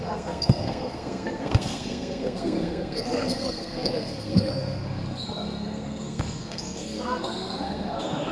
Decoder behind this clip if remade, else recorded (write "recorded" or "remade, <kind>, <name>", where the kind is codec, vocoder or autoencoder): remade, codec, SNAC